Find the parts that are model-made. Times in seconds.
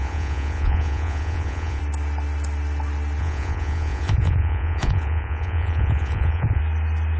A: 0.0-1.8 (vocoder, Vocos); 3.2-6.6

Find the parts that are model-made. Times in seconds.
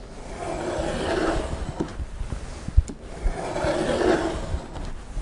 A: none